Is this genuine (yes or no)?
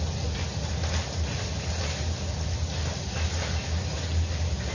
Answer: yes